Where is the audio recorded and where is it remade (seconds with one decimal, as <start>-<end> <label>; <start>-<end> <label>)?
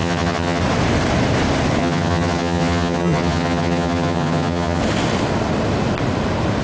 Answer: 0.0-0.6 remade; 0.6-1.8 recorded; 1.8-4.8 remade; 4.8-6.6 recorded